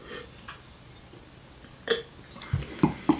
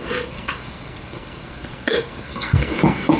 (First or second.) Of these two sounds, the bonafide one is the first